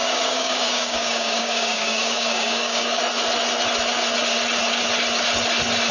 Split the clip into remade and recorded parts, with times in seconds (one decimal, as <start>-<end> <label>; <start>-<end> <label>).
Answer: 0.0-3.0 remade; 3.0-5.9 recorded